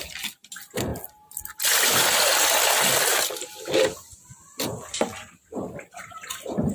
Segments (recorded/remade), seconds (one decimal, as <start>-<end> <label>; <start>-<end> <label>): 0.0-0.9 remade; 0.9-3.2 recorded; 3.2-6.7 remade